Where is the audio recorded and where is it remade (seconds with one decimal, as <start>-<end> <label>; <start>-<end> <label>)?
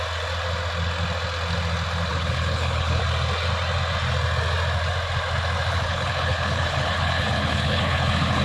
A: 0.0-2.1 recorded; 2.1-3.0 remade; 3.0-5.7 recorded; 5.7-8.4 remade